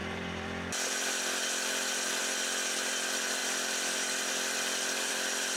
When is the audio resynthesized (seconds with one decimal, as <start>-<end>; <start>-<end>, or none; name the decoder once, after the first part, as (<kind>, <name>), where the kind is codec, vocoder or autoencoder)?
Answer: none